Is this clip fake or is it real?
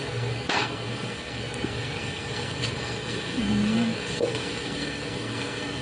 fake